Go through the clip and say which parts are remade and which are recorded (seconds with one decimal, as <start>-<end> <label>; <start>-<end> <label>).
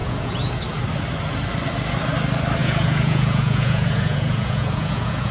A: 0.0-0.5 remade; 0.5-2.6 recorded; 2.6-5.3 remade